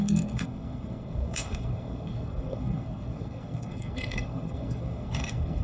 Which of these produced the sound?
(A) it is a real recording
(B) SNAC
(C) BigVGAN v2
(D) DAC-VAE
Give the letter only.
B